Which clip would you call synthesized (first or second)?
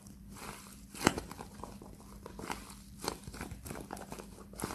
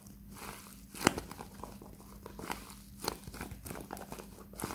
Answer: first